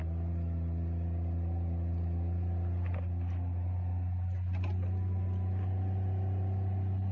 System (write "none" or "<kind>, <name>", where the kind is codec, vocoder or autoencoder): none